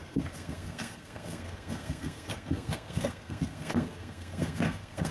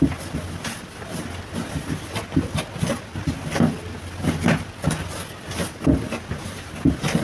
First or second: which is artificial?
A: first